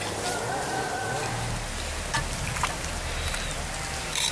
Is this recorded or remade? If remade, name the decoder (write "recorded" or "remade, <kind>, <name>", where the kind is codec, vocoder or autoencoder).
recorded